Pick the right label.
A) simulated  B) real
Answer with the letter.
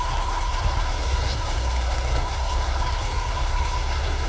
A